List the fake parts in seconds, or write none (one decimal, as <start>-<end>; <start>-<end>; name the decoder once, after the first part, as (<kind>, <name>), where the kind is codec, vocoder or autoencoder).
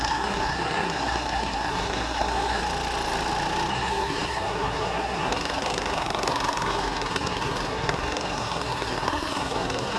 0.0-2.6 (codec, SNAC); 3.7-10.0